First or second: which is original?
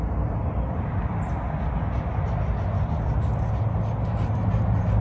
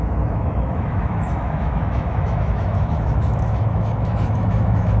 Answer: first